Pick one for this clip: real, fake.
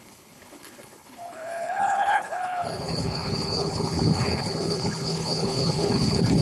fake